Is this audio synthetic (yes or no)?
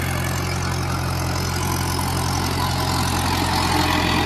no